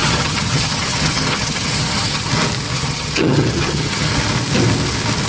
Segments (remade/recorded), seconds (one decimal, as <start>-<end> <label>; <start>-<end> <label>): 0.0-2.3 remade; 2.3-2.7 recorded; 2.7-4.1 remade; 4.1-5.3 recorded